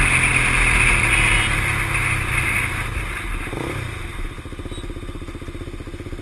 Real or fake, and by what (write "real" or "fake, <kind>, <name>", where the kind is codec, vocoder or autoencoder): real